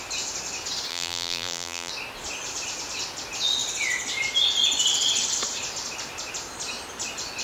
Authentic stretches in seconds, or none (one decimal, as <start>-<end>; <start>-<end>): 0.0-0.9; 1.9-7.4

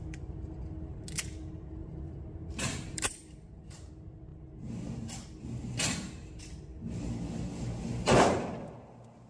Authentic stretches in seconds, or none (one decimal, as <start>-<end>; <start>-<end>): 0.0-1.8; 3.9-9.3